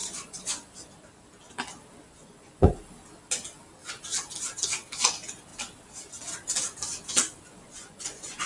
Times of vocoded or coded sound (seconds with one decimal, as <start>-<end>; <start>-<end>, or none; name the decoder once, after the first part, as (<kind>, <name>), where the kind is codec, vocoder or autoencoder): 0.0-0.7 (vocoder, Vocos); 1.9-2.7; 7.5-8.5